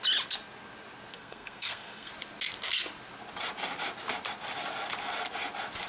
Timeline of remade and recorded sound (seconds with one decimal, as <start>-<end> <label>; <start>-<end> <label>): 0.0-1.1 recorded; 1.1-2.1 remade; 2.1-5.9 recorded